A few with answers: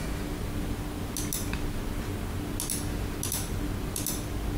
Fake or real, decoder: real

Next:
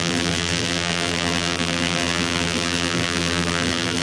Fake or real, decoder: fake, vocoder, BigVGAN v2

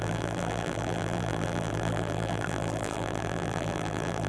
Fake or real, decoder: fake, vocoder, BigVGAN v2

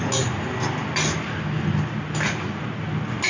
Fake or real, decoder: real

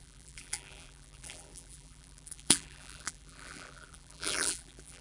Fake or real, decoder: fake, vocoder, BigVGAN v2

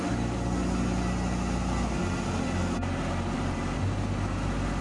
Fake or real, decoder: real